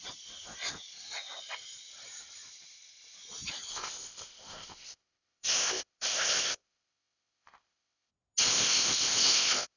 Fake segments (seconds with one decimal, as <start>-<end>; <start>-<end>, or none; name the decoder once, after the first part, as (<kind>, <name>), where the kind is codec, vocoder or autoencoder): 3.7-8.1 (codec, ZipCodec); 8.5-9.8

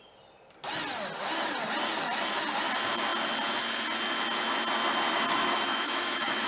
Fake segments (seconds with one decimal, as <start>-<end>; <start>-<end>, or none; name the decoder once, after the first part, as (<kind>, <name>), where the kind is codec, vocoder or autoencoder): 5.7-6.5 (autoencoder, DAC-VAE)

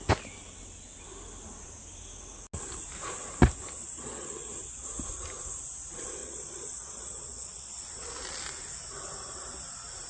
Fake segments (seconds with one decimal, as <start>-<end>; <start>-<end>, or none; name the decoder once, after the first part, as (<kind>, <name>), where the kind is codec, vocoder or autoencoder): 3.8-4.5 (vocoder, Vocos); 6.2-8.1

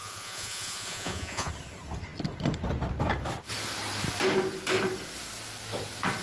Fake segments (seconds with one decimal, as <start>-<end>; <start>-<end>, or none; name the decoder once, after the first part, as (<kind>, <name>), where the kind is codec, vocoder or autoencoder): 0.0-1.5 (vocoder, Vocos)